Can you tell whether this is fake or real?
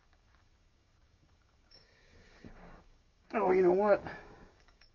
fake